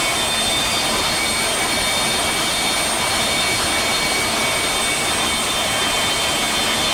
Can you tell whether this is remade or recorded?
recorded